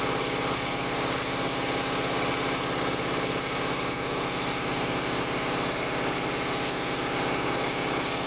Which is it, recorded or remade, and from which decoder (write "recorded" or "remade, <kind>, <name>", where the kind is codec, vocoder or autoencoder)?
recorded